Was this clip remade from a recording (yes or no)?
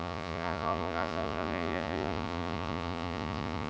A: yes